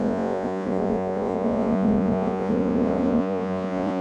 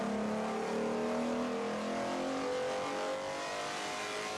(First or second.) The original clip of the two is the second